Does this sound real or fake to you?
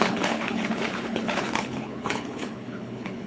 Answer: fake